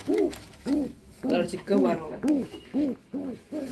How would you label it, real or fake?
fake